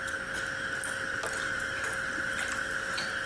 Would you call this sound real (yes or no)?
yes